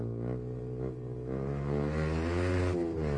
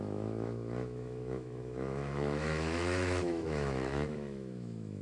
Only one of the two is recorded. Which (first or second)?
first